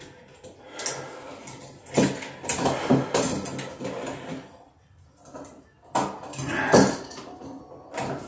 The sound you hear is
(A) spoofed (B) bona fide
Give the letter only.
B